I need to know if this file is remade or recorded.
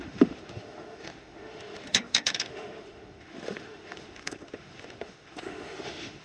remade